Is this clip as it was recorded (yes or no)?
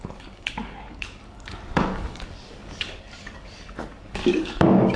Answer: no